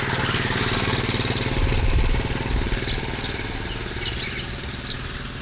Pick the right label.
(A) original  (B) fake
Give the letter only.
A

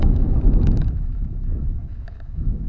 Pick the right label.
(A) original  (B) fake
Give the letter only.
B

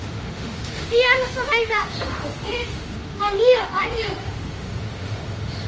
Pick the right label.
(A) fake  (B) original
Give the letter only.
A